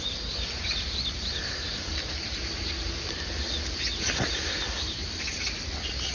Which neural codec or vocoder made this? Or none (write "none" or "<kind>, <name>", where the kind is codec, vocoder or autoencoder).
none